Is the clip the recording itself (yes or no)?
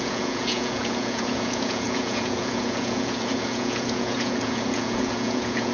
no